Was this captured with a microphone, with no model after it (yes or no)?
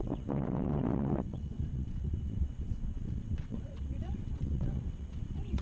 no